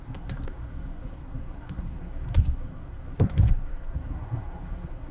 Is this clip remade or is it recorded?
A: remade